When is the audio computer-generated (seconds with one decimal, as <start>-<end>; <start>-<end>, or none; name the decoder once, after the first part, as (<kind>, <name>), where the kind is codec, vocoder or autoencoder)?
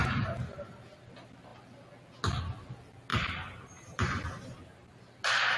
0.0-0.6 (vocoder, BigVGAN v2); 3.1-5.0